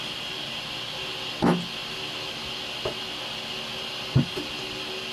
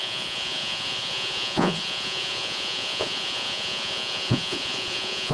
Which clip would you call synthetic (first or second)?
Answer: second